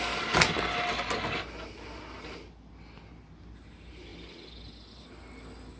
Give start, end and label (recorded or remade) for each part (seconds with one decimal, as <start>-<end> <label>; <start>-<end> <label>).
0.0-5.8 recorded